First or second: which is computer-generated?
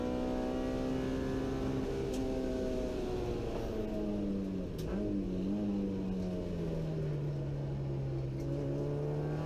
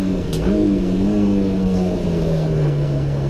second